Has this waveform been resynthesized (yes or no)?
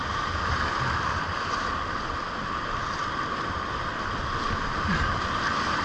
no